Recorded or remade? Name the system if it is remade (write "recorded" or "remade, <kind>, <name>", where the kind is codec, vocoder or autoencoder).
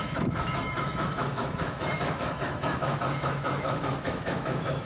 remade, autoencoder, DAC-VAE